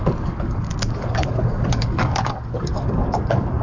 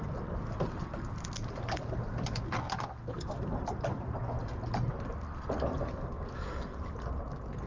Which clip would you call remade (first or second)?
first